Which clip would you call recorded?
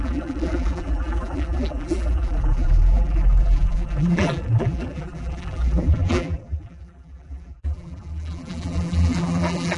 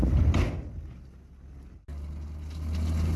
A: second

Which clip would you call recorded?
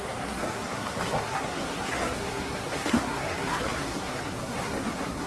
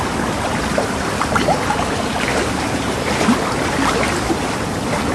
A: second